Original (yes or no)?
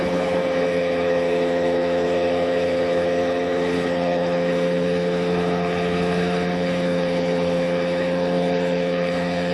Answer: no